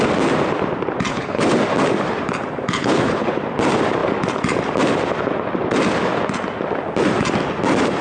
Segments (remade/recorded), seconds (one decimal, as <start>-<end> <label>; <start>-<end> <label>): 0.0-1.1 recorded; 1.1-1.6 remade; 1.6-2.8 recorded; 2.8-3.4 remade; 3.4-8.0 recorded